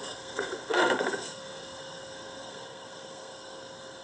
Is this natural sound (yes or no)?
no